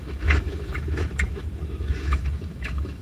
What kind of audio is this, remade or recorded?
remade